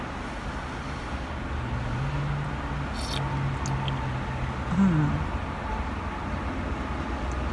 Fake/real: real